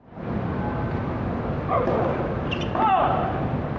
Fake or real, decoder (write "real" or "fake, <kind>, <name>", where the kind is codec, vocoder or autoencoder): real